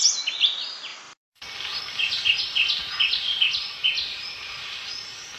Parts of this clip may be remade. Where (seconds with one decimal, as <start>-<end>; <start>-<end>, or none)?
0.9-1.8